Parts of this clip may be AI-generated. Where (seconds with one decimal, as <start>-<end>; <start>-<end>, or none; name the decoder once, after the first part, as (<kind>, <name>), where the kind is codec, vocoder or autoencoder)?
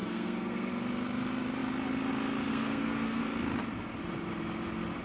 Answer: 0.0-0.7 (codec, SNAC); 2.5-3.2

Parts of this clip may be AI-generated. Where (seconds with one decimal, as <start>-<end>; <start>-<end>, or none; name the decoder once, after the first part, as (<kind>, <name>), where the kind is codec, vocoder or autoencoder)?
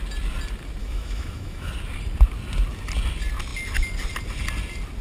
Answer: 0.8-1.7 (autoencoder, DAC-VAE)